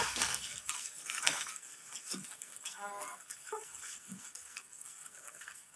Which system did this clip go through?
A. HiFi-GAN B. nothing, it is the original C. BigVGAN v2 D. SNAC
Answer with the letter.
D